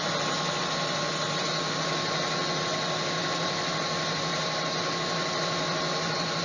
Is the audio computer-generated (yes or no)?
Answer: no